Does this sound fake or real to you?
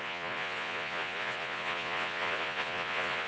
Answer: fake